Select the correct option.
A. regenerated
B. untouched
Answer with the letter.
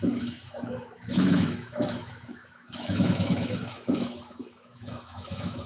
A